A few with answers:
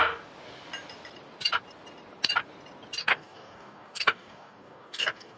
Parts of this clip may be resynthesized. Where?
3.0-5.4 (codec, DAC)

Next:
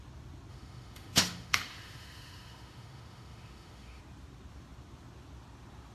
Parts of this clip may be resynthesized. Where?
0.5-4.0 (autoencoder, DAC-VAE)

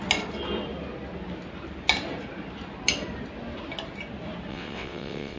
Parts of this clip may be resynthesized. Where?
4.5-5.4 (vocoder, WaveNeXt)